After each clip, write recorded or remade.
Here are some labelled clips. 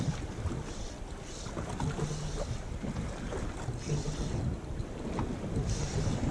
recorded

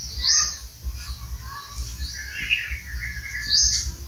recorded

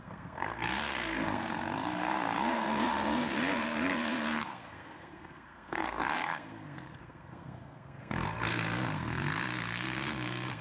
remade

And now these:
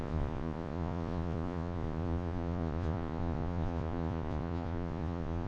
remade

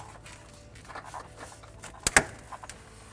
recorded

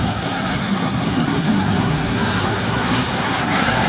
remade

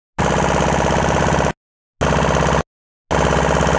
recorded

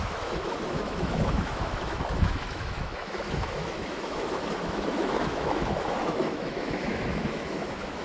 remade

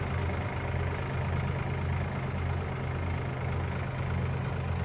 recorded